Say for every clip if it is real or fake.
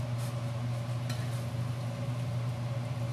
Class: real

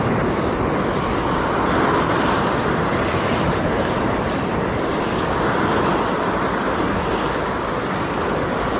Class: real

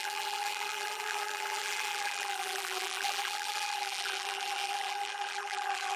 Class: fake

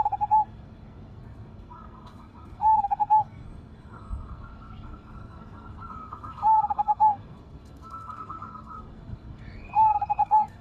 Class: fake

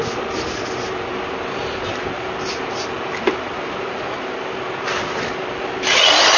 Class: real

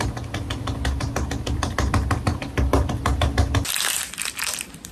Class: fake